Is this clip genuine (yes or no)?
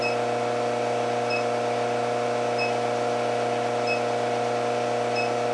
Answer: yes